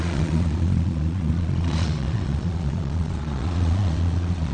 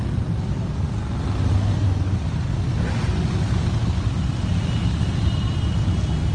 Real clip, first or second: second